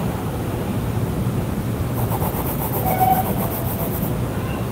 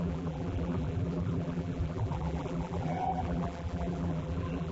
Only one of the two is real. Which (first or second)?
first